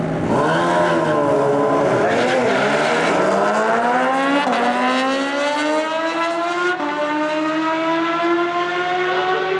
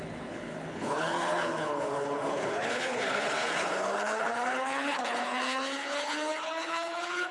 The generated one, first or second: second